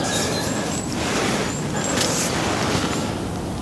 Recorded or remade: recorded